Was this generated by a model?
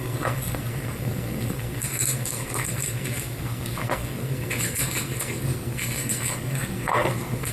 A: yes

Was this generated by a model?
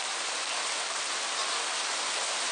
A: no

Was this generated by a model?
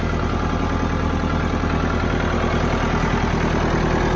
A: no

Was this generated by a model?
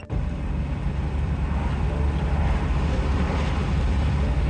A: no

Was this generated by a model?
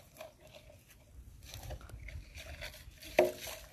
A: no